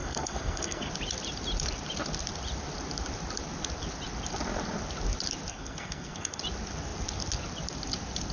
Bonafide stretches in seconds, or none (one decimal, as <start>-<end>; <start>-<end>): 0.9-5.5; 6.4-8.3